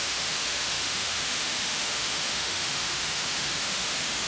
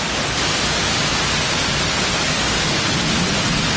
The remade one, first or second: first